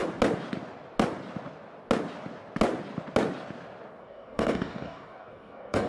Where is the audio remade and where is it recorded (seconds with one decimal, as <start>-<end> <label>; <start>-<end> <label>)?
0.0-4.0 recorded; 4.0-5.9 remade